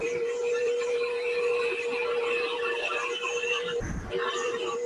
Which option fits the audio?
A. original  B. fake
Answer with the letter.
B